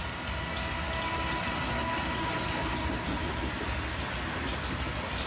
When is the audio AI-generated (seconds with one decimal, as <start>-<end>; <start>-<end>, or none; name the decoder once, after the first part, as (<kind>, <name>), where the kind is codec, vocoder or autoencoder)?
none